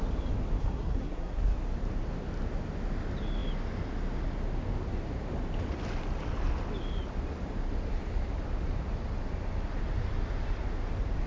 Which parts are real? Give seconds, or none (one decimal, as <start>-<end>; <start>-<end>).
0.0-0.6; 1.4-11.3